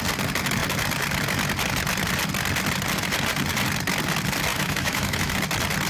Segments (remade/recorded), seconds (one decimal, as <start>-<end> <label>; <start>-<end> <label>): 0.0-4.5 recorded; 4.5-5.3 remade; 5.3-5.9 recorded